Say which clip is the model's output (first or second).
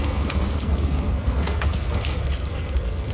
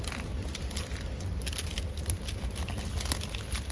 first